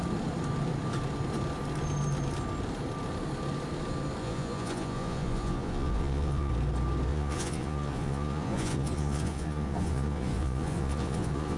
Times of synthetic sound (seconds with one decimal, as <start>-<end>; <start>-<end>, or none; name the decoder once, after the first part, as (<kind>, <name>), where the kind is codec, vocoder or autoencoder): 4.2-6.5 (vocoder, Vocos); 7.1-11.6